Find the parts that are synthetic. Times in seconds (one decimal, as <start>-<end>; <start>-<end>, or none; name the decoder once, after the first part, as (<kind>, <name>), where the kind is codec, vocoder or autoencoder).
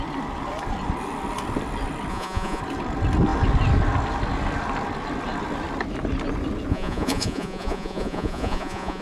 2.1-2.6 (vocoder, Vocos); 6.7-9.0